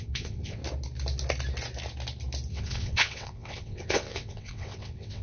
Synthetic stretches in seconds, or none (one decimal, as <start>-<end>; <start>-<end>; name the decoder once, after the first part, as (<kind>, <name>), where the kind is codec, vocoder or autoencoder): 0.0-0.6 (vocoder, WaveNeXt); 2.5-5.2